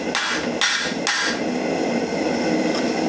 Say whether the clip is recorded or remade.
recorded